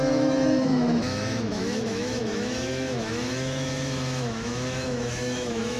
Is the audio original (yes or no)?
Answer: no